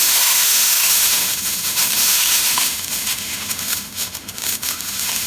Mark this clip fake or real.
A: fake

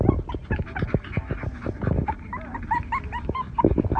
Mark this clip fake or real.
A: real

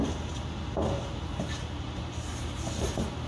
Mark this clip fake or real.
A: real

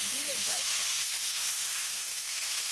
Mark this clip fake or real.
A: fake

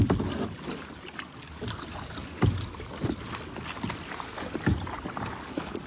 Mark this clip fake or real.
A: real